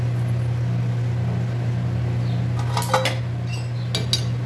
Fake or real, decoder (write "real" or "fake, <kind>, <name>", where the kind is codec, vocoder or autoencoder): real